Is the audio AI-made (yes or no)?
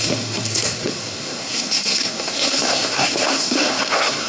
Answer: yes